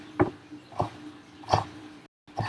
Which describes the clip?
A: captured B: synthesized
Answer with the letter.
A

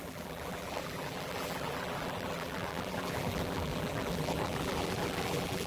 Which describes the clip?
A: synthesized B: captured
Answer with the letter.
A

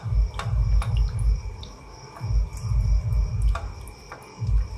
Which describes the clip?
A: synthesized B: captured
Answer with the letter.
B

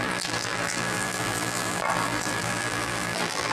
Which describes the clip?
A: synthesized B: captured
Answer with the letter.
A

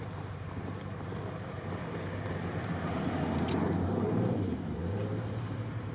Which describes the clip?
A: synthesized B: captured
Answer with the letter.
A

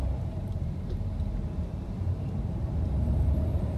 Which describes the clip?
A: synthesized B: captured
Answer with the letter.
A